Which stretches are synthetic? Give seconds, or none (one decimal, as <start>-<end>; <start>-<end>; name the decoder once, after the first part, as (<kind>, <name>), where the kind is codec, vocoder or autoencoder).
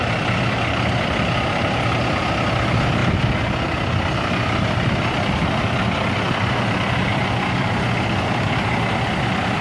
none